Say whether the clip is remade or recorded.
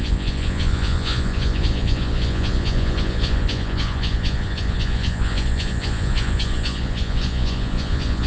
remade